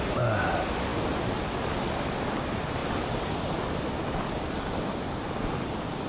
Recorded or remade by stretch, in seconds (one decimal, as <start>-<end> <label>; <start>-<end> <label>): 0.0-6.1 recorded